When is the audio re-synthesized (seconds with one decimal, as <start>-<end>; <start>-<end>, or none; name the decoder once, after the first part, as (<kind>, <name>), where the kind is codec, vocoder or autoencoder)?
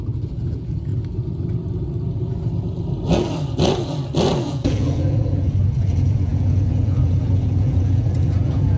0.0-0.9 (vocoder, Vocos); 4.5-8.8